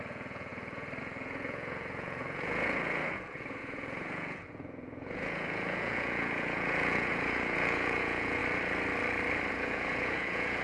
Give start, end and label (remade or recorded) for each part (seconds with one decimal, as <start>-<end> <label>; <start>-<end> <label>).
0.0-8.4 remade; 8.4-9.5 recorded; 9.5-10.6 remade